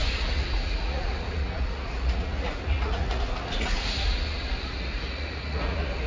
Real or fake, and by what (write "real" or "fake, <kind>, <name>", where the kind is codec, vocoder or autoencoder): fake, vocoder, Vocos